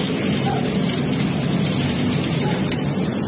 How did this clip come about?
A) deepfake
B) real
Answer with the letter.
B